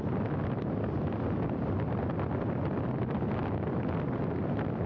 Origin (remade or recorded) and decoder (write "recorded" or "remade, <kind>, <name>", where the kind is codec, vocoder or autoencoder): recorded